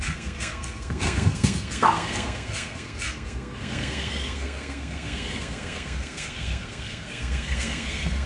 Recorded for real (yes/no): no